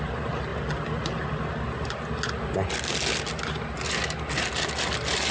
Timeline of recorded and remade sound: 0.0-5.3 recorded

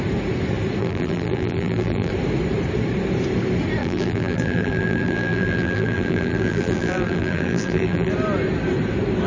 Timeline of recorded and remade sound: 0.0-0.8 recorded; 0.8-2.1 remade; 2.1-3.8 recorded; 3.8-8.1 remade; 8.1-9.3 recorded

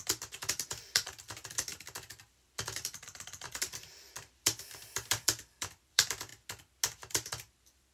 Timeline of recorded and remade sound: 0.0-6.3 remade; 6.3-7.1 recorded; 7.1-7.9 remade

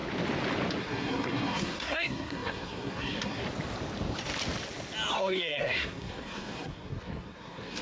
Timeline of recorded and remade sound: 0.0-0.8 recorded; 0.8-3.4 remade; 3.4-5.1 recorded; 5.1-7.8 remade